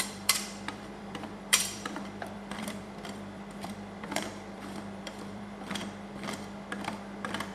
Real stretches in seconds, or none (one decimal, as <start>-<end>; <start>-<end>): 5.8-7.5